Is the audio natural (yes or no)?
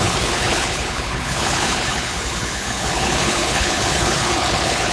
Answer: no